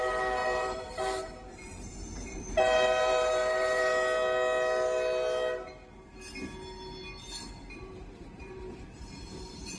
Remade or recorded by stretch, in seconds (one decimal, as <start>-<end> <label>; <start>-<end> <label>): 0.0-3.9 remade; 3.9-7.5 recorded; 7.5-9.8 remade